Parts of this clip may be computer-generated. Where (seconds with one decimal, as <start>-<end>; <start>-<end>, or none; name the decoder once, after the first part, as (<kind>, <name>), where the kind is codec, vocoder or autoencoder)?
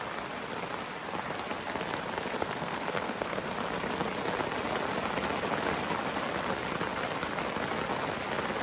2.4-3.5 (codec, SNAC)